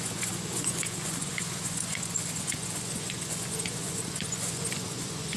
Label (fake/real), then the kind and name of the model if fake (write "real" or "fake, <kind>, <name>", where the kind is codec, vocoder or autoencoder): fake, vocoder, Vocos